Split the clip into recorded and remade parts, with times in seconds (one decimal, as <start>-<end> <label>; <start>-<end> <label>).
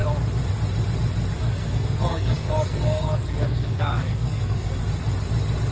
0.0-1.4 recorded; 1.4-4.8 remade; 4.8-5.7 recorded